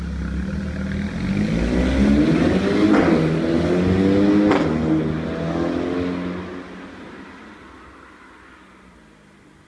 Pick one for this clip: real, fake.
real